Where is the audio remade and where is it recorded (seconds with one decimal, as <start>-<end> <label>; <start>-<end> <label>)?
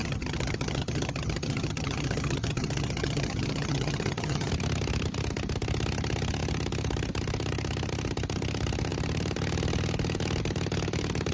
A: 0.0-4.5 remade; 4.5-11.3 recorded